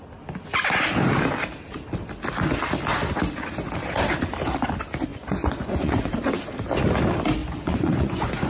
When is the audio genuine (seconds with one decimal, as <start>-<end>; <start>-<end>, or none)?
0.0-5.1; 6.1-7.4